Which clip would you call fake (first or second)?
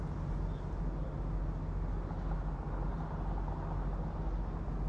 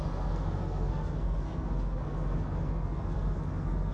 second